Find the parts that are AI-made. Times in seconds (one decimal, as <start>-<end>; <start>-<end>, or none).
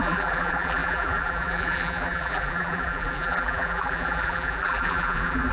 0.0-5.5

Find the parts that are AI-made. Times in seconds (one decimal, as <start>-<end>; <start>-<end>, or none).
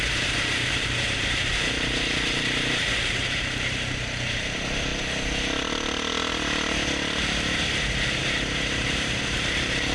0.0-4.9; 7.2-9.9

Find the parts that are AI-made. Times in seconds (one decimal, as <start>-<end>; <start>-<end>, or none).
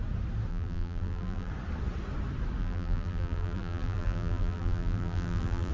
0.5-1.5; 2.6-5.7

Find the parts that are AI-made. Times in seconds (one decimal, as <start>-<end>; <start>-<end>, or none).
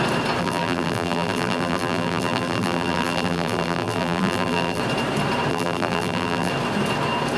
0.4-4.8; 5.5-6.5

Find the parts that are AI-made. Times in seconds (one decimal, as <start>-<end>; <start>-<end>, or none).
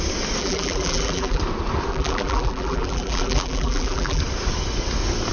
0.4-1.4; 1.9-4.2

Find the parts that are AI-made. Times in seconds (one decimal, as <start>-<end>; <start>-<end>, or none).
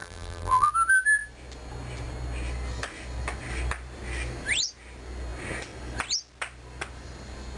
0.0-0.7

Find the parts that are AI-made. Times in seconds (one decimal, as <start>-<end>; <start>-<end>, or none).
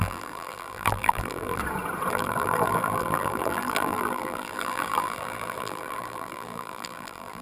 0.0-1.6; 2.1-7.4